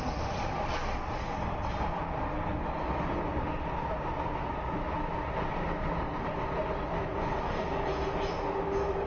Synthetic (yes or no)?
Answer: no